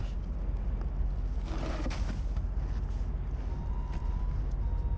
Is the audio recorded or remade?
recorded